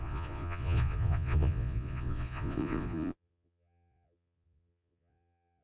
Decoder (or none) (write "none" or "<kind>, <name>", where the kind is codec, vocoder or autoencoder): vocoder, Vocos